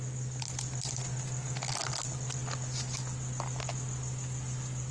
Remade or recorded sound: recorded